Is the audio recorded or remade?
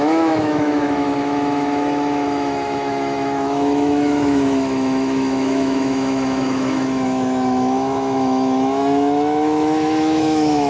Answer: remade